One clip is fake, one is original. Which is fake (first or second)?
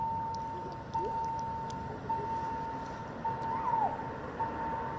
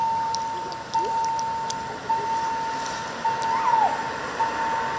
second